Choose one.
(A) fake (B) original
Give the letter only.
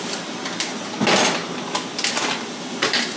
B